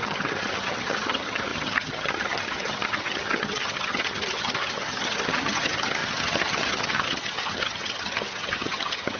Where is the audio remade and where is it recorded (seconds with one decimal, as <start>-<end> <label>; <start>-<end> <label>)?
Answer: 0.0-9.2 remade